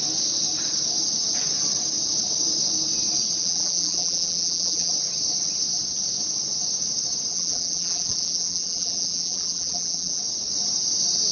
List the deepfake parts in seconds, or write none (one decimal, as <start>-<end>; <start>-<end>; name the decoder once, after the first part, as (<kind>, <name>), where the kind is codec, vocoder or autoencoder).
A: 3.4-4.9 (vocoder, BigVGAN v2); 7.3-10.2